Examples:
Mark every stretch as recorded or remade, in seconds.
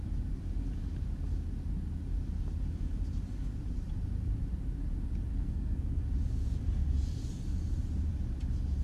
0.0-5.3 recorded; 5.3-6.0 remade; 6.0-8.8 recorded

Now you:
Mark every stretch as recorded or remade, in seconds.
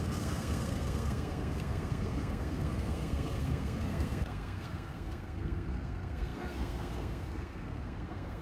0.0-8.4 remade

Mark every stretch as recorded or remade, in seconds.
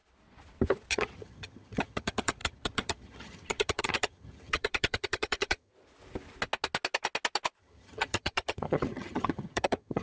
0.0-0.9 recorded; 0.9-5.7 remade; 5.7-7.6 recorded; 7.6-10.0 remade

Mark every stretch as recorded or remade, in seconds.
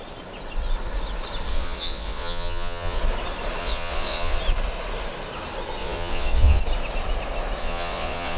0.0-1.5 recorded; 1.5-3.0 remade; 3.0-3.6 recorded; 3.6-4.4 remade; 4.4-5.8 recorded; 5.8-6.6 remade; 6.6-7.6 recorded; 7.6-8.4 remade